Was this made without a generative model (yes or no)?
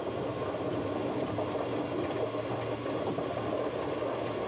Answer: yes